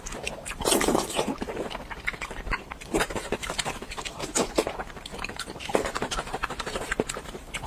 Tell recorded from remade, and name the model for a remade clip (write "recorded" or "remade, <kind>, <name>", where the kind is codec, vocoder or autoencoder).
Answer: remade, vocoder, BigVGAN v2